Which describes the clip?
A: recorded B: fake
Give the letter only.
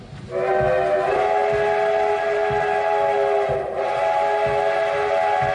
A